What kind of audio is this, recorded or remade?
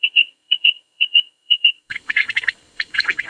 remade